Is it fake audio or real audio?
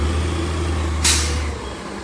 real